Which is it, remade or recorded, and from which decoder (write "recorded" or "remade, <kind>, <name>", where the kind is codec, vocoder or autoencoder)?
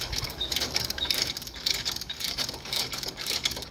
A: remade, codec, DAC